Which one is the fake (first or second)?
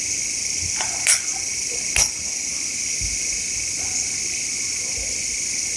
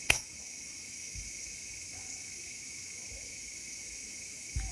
second